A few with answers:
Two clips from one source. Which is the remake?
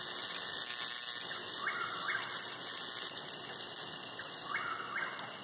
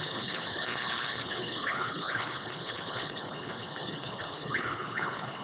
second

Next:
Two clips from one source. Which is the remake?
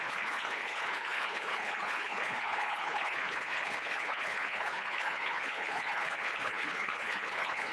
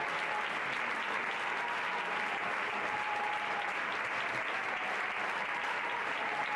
first